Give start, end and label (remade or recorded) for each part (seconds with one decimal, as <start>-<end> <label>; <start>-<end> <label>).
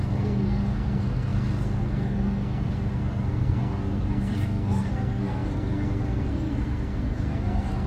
0.0-7.9 remade